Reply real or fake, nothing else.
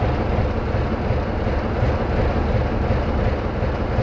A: real